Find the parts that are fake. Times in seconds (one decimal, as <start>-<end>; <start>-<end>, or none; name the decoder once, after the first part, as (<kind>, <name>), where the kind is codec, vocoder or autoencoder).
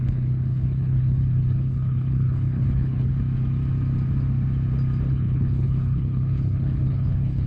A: 0.0-3.1 (codec, HILCodec); 5.1-7.5